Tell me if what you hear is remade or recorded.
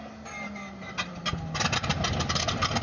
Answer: recorded